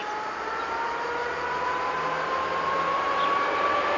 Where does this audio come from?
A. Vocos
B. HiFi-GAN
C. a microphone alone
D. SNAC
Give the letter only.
C